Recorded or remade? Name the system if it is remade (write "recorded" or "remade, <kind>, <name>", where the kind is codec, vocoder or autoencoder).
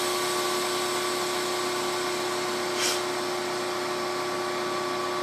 recorded